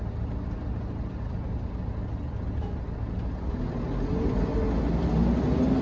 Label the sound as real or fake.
real